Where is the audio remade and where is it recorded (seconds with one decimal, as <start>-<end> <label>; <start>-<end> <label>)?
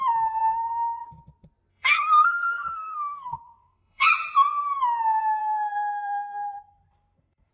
0.0-0.4 recorded; 0.4-1.0 remade; 1.0-1.7 recorded; 1.7-4.1 remade; 4.1-5.4 recorded; 5.4-7.5 remade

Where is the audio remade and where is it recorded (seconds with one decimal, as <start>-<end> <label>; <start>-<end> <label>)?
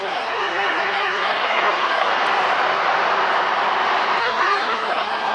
0.0-2.1 remade; 2.1-4.2 recorded; 4.2-5.3 remade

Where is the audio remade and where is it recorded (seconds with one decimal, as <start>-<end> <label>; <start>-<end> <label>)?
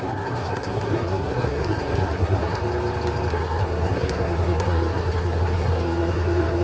0.0-2.6 remade; 2.6-3.3 recorded; 3.3-6.6 remade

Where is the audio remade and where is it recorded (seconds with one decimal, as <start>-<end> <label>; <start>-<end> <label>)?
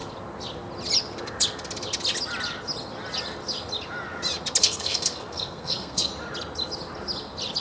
0.0-4.6 recorded; 4.6-6.1 remade; 6.1-7.6 recorded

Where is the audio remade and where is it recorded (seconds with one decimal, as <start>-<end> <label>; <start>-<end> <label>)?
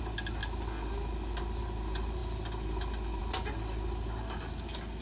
0.0-5.0 recorded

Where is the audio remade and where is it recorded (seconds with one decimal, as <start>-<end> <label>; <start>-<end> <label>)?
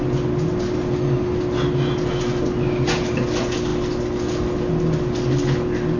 0.0-6.0 recorded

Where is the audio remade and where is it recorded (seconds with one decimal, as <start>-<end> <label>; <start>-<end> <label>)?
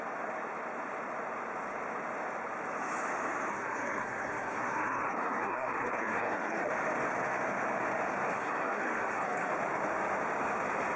0.0-3.5 recorded; 3.5-6.7 remade; 6.7-8.3 recorded; 8.3-9.5 remade; 9.5-11.0 recorded